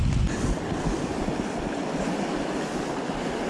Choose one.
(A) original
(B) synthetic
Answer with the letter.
A